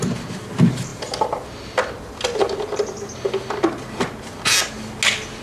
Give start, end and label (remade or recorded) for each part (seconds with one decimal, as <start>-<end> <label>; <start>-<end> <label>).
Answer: 0.0-5.4 recorded